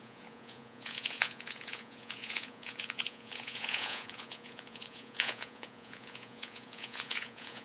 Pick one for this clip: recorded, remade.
remade